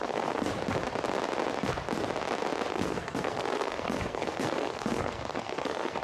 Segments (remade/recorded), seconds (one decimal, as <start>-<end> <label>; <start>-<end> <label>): 0.0-0.5 remade; 0.5-2.7 recorded; 2.7-6.0 remade